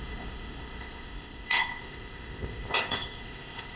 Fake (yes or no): yes